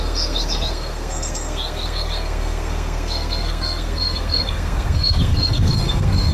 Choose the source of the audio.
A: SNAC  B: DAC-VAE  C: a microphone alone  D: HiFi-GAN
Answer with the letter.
A